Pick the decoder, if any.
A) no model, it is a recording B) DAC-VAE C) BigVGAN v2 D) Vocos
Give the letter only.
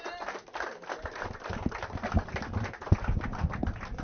A